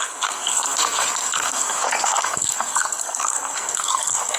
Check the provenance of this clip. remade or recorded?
remade